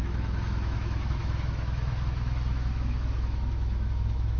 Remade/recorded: remade